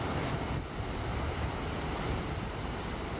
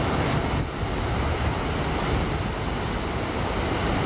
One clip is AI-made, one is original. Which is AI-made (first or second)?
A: first